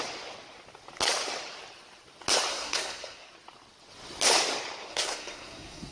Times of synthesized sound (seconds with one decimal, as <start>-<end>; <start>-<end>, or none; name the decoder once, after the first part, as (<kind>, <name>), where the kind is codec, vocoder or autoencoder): 2.5-3.3 (codec, SNAC); 4.9-5.9